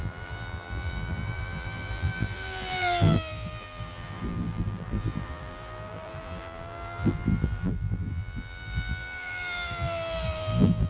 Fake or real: fake